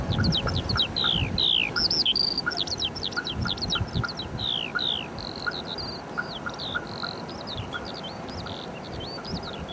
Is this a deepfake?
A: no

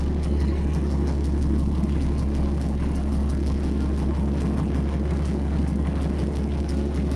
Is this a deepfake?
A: yes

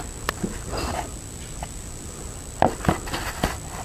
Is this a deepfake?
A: no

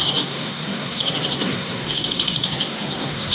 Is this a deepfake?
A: yes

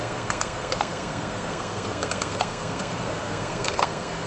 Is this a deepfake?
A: yes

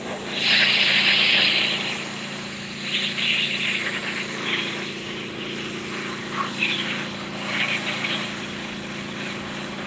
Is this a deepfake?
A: no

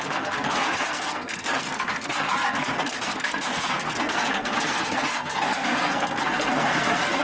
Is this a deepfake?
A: yes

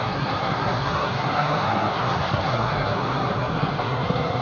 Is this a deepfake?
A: yes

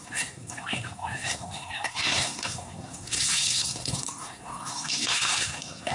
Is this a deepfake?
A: yes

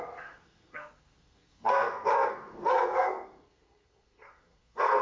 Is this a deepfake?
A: yes